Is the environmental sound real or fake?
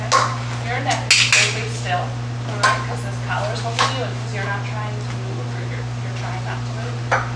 real